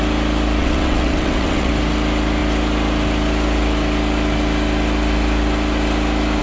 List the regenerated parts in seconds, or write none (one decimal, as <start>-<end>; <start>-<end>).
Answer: 0.6-1.7